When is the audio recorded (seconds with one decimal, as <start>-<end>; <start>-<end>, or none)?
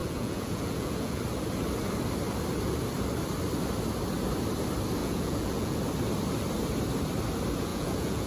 1.2-5.0; 5.8-7.7